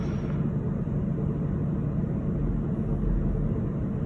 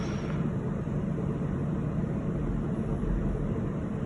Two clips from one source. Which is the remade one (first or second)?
second